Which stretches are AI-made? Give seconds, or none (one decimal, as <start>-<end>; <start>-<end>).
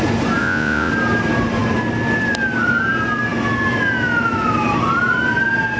0.4-0.9